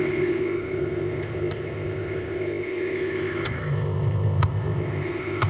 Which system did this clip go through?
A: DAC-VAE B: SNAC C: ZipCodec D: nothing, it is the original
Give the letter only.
C